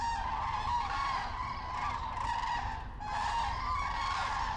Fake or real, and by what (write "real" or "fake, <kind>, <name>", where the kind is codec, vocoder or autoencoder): real